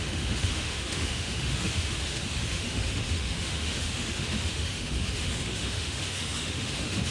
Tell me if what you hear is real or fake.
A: fake